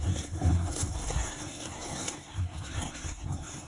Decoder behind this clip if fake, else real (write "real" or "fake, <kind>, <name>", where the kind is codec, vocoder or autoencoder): fake, codec, SNAC